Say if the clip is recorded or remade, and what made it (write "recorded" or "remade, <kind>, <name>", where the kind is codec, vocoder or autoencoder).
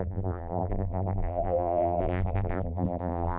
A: remade, vocoder, BigVGAN v2